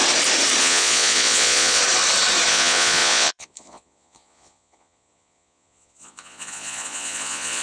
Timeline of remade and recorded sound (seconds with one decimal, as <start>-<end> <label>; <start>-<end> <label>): 0.0-0.6 recorded; 0.6-1.8 remade; 1.8-2.5 recorded; 2.5-7.6 remade